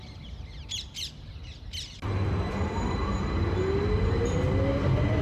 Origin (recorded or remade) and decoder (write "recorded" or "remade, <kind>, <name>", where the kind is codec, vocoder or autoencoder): recorded